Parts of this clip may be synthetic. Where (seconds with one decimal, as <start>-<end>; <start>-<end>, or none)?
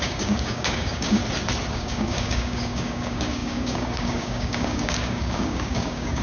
0.0-1.2; 1.7-6.2